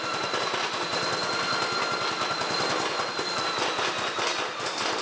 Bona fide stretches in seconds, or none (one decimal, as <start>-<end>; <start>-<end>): 0.0-5.0